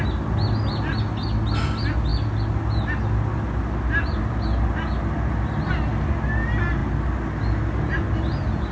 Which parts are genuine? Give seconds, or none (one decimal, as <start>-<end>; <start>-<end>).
0.0-8.7